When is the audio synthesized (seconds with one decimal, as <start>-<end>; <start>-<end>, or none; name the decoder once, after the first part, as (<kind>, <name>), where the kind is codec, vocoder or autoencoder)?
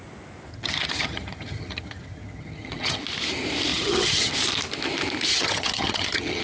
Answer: 0.5-3.0 (vocoder, HiFi-GAN); 3.7-4.3; 5.3-6.4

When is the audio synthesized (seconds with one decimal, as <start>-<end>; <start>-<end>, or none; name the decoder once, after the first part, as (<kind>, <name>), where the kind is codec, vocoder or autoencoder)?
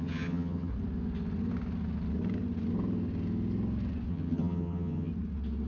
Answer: 0.0-0.7 (vocoder, HiFi-GAN); 4.1-5.1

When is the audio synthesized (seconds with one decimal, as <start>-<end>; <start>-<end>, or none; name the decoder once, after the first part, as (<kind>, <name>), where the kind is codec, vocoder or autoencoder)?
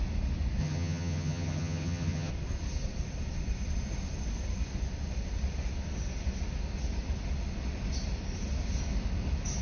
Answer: 0.6-2.3 (vocoder, HiFi-GAN)